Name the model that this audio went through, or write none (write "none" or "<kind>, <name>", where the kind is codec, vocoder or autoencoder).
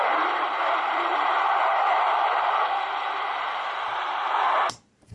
vocoder, BigVGAN v2